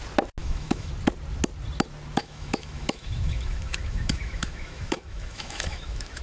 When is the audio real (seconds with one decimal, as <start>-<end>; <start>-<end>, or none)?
0.0-0.4; 0.9-2.2